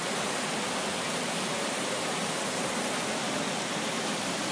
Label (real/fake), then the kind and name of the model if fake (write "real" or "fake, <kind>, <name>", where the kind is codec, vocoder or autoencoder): real